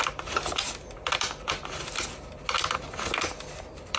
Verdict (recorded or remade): recorded